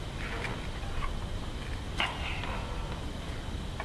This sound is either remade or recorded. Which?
recorded